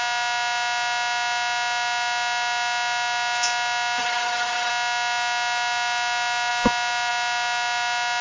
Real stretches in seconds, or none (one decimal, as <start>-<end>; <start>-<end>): 0.0-4.0; 4.7-8.2